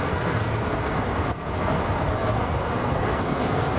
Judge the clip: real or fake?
fake